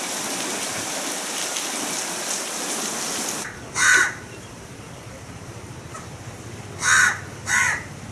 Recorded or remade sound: recorded